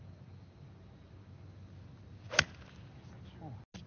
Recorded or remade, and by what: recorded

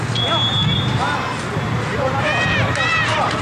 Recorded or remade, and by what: recorded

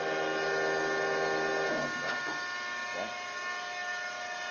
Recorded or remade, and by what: recorded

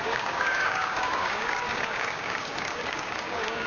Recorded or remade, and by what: remade, codec, DAC